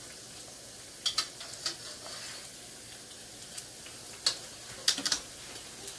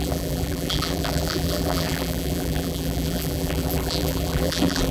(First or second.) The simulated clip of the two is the second